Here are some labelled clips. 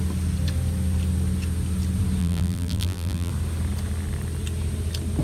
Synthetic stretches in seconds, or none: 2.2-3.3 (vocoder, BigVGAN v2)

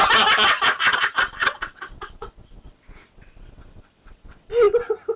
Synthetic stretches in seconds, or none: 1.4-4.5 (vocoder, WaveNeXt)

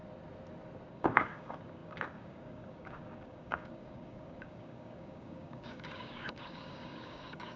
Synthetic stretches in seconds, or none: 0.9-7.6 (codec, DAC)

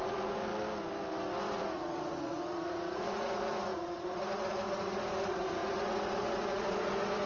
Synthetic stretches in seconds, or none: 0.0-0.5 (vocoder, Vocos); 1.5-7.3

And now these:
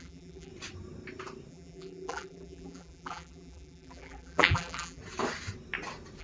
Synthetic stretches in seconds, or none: 0.0-0.5 (vocoder, BigVGAN v2); 1.5-5.0